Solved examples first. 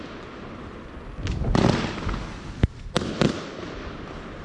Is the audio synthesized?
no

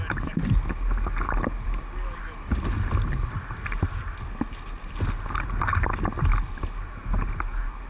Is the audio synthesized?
no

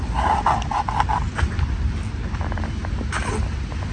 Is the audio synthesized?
no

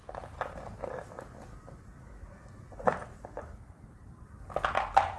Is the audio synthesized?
yes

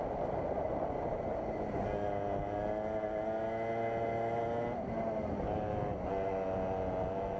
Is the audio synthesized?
no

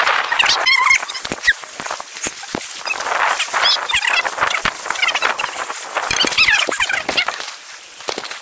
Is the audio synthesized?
no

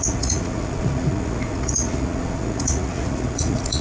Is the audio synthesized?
yes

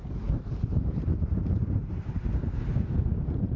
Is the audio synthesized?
yes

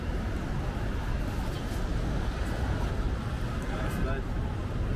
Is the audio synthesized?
no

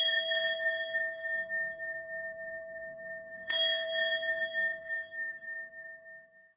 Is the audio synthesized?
yes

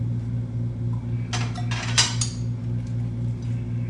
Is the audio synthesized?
no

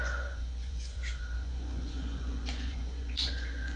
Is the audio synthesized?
yes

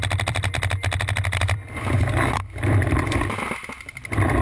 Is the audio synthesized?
yes